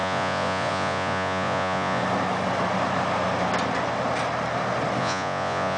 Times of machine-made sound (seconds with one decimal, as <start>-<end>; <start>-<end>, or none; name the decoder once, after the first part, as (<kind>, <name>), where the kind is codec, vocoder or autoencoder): 0.0-2.0 (vocoder, Vocos); 5.0-5.8